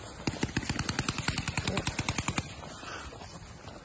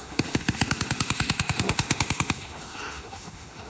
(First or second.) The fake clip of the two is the second